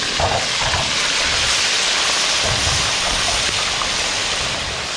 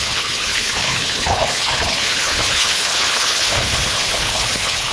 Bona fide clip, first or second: first